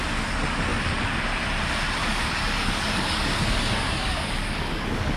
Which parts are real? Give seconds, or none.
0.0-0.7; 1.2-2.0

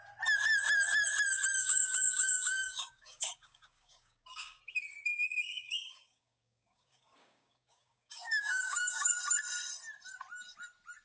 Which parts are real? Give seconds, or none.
0.0-1.6; 4.6-5.1; 9.2-11.0

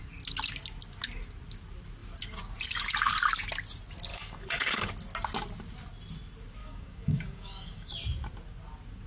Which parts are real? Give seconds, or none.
0.0-4.1; 4.9-6.6; 7.9-9.1